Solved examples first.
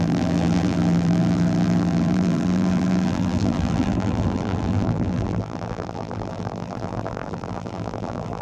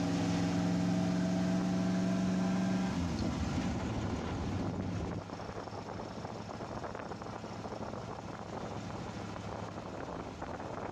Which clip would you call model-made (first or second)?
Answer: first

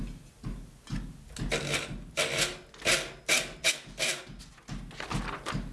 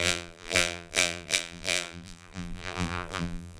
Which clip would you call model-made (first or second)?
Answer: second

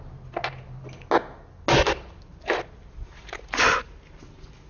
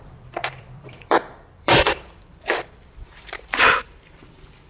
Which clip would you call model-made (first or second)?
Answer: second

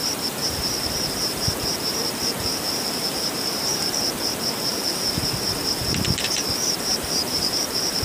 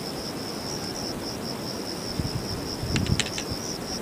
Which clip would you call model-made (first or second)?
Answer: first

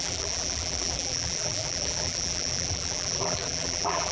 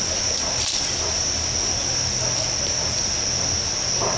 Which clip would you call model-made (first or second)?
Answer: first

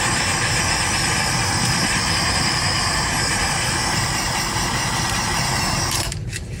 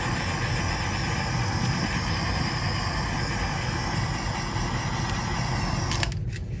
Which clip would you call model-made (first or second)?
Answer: first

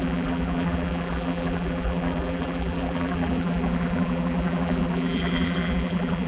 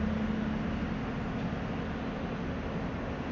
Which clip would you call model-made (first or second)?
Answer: first